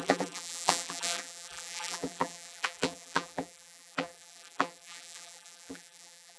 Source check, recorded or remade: remade